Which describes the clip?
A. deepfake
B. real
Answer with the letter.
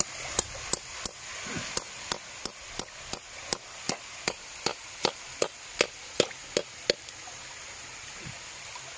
B